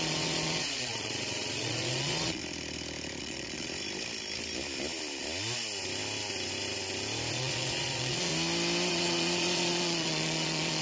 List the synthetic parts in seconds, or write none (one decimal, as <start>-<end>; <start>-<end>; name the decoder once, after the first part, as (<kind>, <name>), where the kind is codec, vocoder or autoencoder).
0.0-2.4 (vocoder, Vocos); 3.2-3.7; 7.3-8.3; 8.9-10.8